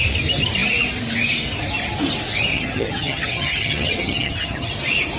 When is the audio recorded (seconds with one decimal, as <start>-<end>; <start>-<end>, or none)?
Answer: 0.0-2.5; 4.7-5.2